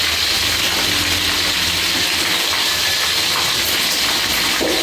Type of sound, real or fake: real